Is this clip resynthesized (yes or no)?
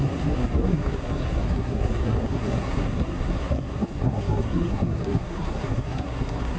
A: yes